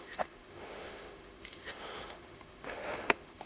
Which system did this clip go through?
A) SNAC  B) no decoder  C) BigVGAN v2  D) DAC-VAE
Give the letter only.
D